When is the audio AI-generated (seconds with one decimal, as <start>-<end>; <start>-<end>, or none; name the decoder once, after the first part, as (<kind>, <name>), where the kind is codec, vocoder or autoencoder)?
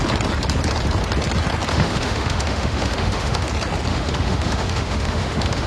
1.7-3.5 (autoencoder, DAC-VAE); 3.9-5.7